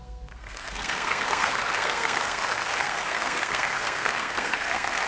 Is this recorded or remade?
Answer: remade